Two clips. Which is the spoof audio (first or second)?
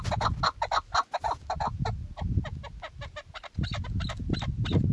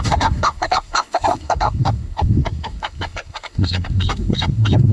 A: second